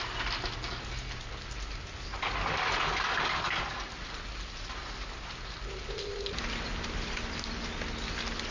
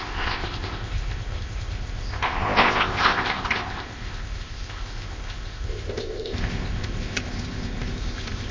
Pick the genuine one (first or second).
first